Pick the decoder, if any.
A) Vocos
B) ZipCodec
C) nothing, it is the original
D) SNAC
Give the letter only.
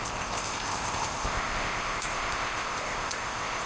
B